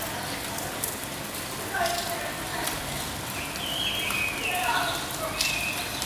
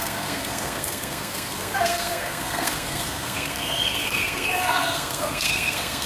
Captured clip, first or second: first